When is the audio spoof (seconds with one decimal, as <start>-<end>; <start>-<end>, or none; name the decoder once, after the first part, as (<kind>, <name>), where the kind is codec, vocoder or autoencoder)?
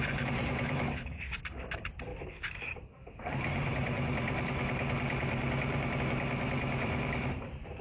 0.0-7.8 (vocoder, BigVGAN v2)